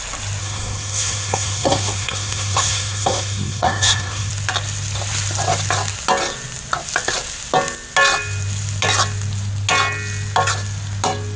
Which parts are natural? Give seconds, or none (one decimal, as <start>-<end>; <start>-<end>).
0.0-0.4; 4.3-11.4